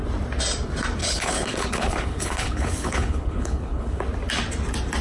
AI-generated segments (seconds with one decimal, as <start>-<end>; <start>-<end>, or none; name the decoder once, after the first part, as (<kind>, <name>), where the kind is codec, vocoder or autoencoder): 1.0-4.0 (codec, HILCodec)